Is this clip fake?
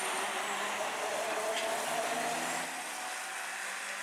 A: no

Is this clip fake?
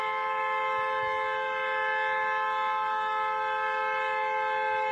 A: no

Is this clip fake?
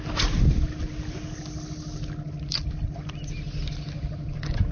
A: no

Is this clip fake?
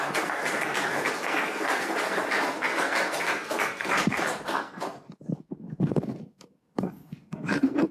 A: yes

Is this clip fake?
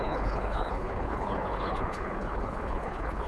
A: yes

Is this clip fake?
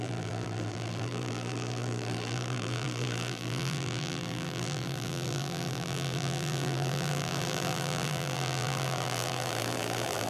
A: yes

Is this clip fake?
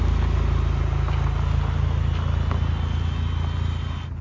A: no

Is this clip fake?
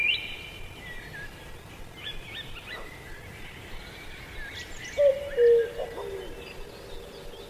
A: no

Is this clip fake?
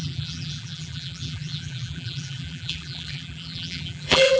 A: yes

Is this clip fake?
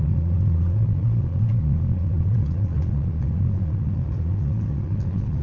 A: yes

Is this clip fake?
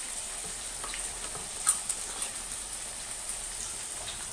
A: yes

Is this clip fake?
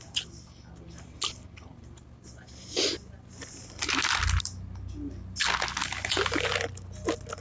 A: no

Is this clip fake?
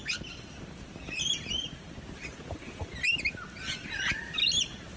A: no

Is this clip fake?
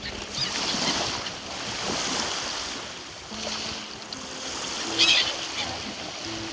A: no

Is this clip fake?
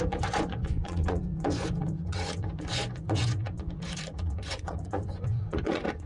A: yes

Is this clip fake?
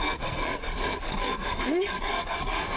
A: yes